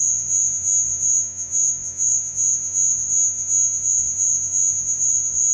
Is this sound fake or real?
fake